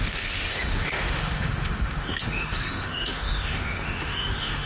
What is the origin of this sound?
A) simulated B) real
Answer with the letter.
A